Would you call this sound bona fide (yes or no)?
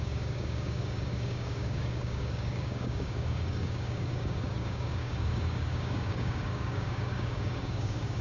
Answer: no